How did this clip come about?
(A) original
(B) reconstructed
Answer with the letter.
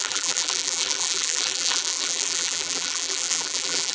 B